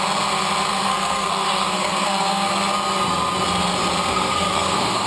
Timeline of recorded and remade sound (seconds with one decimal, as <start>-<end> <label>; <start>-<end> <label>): 0.0-0.7 recorded; 0.7-2.5 remade; 2.5-4.1 recorded; 4.1-5.1 remade